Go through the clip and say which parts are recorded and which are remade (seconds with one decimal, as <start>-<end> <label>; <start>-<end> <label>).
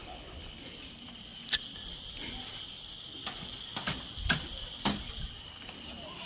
0.0-0.6 remade; 0.6-6.3 recorded